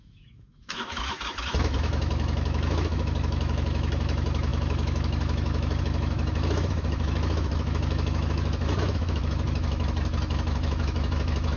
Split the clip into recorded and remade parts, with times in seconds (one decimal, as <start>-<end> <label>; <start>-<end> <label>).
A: 0.0-11.6 remade